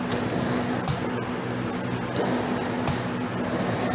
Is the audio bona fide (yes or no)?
yes